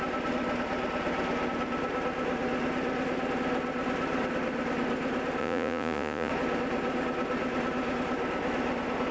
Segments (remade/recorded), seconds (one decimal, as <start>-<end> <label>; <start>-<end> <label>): 0.0-5.4 recorded; 5.4-6.3 remade; 6.3-9.1 recorded